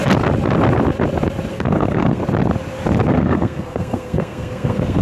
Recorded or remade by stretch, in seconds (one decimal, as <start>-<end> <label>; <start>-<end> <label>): 0.0-1.5 recorded; 1.5-2.2 remade; 2.2-3.1 recorded; 3.1-5.0 remade